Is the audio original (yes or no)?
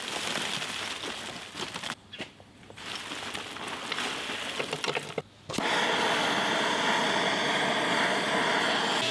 yes